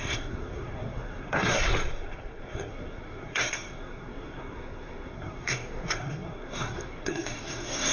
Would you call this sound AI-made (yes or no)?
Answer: yes